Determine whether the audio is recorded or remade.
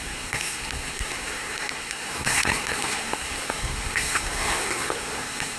remade